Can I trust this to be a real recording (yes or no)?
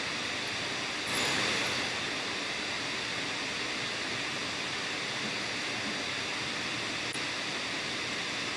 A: yes